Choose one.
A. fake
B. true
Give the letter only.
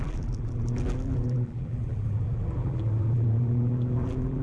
A